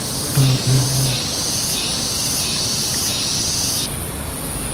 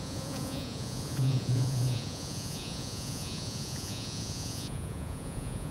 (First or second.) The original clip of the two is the first